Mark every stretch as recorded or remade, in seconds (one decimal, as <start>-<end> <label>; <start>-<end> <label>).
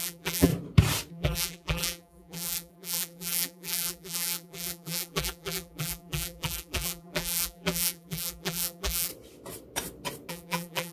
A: 0.0-0.5 remade; 0.5-1.1 recorded; 1.1-9.1 remade; 9.1-10.3 recorded; 10.3-10.9 remade